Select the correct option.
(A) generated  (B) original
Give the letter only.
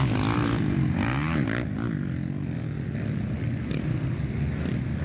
B